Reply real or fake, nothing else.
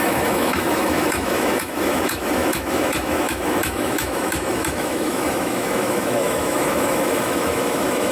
fake